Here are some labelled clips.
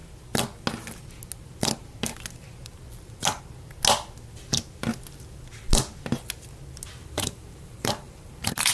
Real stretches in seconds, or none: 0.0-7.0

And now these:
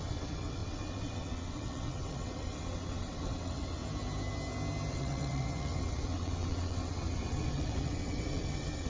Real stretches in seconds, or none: 3.8-4.9

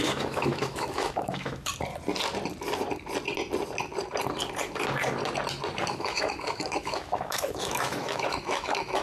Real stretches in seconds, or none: 1.7-5.9

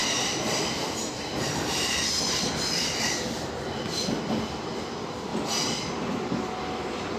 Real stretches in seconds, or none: 0.0-7.2

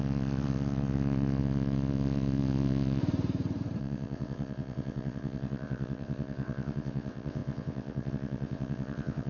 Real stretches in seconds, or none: 3.0-3.8

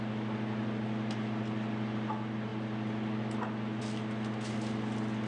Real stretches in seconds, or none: 0.0-5.3

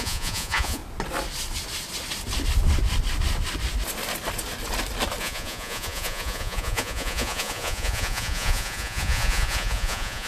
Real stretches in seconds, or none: 0.8-5.2